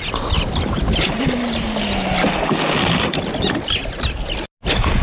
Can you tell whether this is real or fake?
real